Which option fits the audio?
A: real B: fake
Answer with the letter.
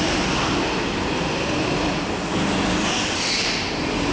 A